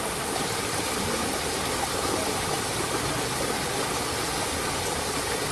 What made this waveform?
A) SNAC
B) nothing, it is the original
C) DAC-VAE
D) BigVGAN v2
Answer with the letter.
B